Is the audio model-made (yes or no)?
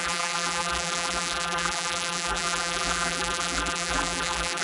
yes